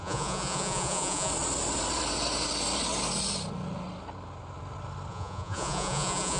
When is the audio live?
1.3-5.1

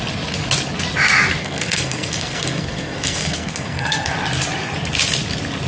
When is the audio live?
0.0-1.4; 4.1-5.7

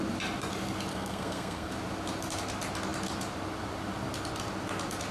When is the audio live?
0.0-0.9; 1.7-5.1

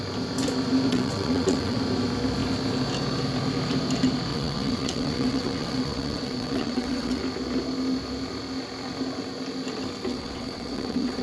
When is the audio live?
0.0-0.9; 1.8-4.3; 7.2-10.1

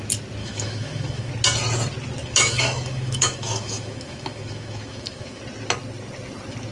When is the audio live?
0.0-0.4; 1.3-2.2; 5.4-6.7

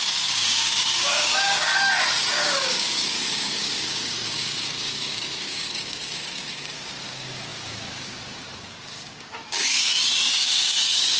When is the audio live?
1.7-2.3